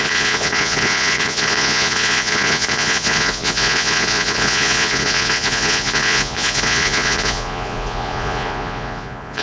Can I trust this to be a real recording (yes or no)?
no